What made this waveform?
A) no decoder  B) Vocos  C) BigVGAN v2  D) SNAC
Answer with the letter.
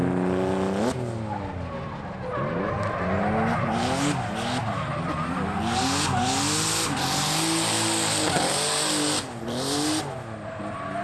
A